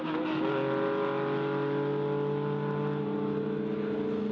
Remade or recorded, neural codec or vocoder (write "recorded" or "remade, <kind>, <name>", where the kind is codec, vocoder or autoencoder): recorded